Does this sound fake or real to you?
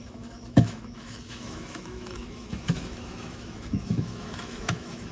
fake